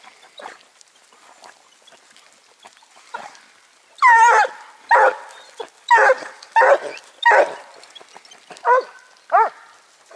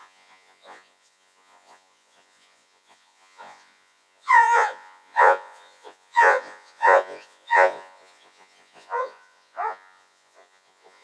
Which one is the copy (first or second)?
second